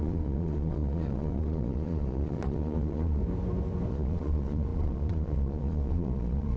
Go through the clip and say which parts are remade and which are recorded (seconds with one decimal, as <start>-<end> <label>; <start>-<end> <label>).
0.0-3.2 remade; 3.2-3.9 recorded; 3.9-6.6 remade